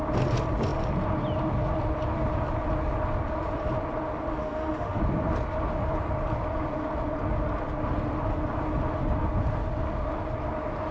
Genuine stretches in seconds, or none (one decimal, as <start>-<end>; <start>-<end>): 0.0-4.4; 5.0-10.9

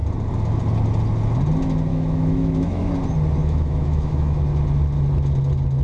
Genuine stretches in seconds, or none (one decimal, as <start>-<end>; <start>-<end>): 0.0-1.9; 2.9-3.4; 4.4-5.8

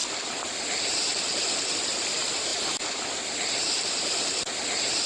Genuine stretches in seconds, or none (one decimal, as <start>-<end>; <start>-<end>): 0.0-5.1

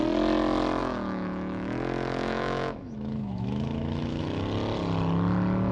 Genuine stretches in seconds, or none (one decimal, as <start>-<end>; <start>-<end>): 0.0-0.8; 4.2-5.7